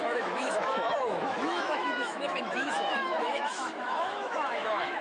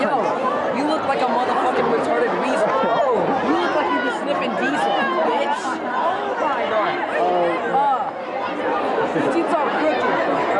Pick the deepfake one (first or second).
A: first